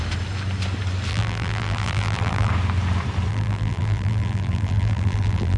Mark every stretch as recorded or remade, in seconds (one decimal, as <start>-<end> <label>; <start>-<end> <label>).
0.0-1.1 recorded; 1.1-2.5 remade; 2.5-3.3 recorded; 3.3-5.6 remade